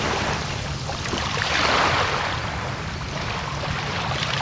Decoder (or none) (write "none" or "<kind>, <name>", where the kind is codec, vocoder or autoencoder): vocoder, BigVGAN v2